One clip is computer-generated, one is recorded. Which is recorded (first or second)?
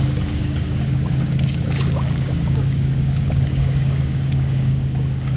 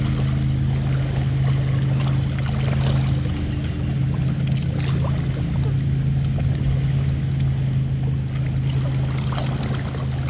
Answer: second